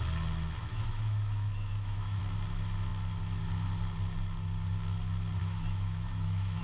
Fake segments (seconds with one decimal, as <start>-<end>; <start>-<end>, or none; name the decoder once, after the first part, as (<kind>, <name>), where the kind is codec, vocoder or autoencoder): 0.6-2.2 (autoencoder, DAC-VAE); 5.4-6.6